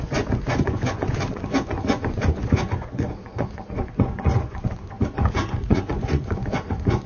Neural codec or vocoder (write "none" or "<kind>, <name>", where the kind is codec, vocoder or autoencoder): vocoder, Vocos